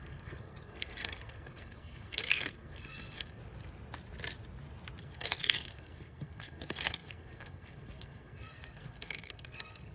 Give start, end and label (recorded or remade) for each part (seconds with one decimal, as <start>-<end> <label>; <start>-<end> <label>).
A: 0.0-3.4 remade; 3.4-5.0 recorded; 5.0-9.9 remade